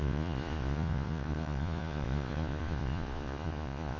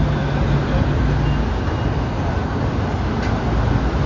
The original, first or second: second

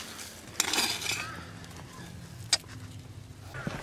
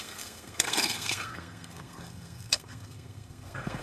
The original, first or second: first